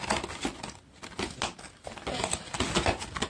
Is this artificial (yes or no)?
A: no